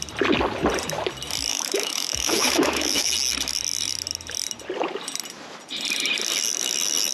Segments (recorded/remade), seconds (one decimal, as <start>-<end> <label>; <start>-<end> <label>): 0.0-1.5 recorded; 1.5-3.1 remade; 3.1-7.1 recorded